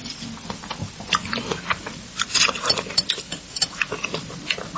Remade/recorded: recorded